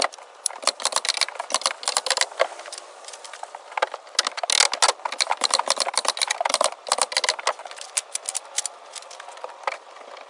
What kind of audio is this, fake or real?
real